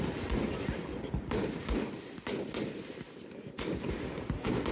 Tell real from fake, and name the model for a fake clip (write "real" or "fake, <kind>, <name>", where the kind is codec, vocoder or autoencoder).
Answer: real